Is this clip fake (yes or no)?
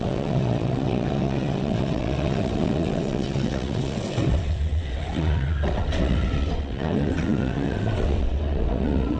yes